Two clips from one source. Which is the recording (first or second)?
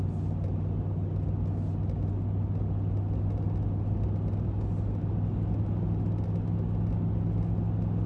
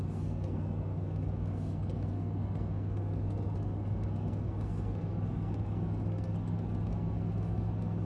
first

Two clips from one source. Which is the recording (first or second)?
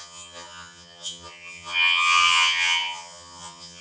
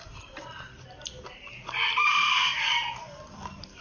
second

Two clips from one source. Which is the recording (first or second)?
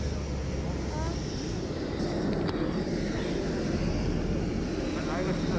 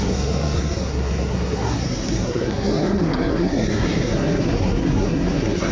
first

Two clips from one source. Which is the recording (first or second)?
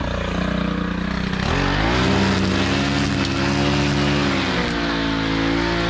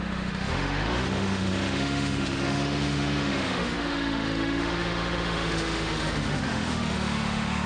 first